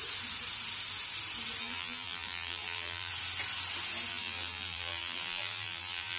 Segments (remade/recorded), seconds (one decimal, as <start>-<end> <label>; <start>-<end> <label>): 0.0-1.6 recorded; 1.6-3.1 remade; 3.1-4.1 recorded; 4.1-6.2 remade